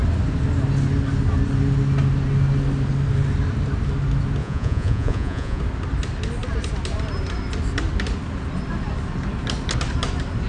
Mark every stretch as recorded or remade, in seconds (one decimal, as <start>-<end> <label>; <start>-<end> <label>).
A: 0.0-4.4 recorded; 4.4-5.6 remade; 5.6-10.5 recorded